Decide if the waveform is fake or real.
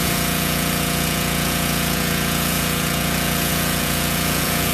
fake